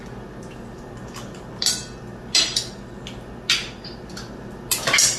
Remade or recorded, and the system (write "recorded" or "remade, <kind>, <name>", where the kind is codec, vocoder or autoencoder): recorded